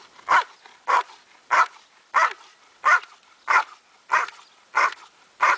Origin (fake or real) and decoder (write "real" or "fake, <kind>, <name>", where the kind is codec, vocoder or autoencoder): real